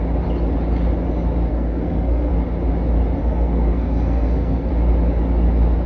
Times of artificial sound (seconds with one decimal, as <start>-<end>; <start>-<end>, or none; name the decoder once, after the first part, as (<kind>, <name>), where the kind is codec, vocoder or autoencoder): 1.5-2.3 (codec, SNAC); 3.2-4.7